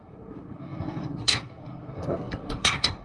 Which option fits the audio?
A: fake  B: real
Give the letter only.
A